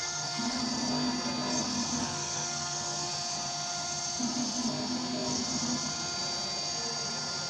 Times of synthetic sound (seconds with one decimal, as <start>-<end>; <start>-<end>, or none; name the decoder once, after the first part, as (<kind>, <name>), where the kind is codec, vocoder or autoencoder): 0.0-0.6 (codec, SNAC); 2.0-3.1